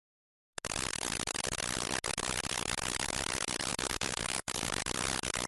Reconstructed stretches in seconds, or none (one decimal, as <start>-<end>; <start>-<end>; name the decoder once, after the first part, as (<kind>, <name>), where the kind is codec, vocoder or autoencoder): 3.7-4.8 (codec, DAC)